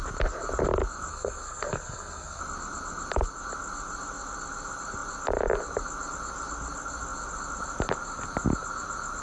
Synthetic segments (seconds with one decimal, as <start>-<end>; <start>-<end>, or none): 1.1-2.4